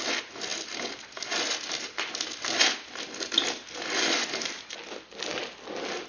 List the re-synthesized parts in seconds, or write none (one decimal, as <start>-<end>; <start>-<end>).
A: none